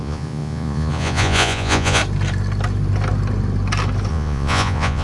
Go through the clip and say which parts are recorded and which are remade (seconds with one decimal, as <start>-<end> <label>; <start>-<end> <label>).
0.0-2.0 remade; 2.0-4.1 recorded; 4.1-5.0 remade